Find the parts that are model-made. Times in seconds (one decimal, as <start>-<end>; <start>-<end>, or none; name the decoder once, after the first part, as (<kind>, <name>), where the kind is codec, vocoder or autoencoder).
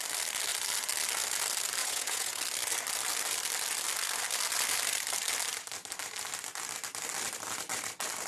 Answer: 1.8-2.4 (vocoder, Vocos)